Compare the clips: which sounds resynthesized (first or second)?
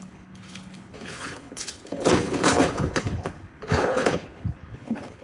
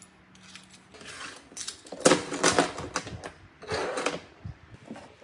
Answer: first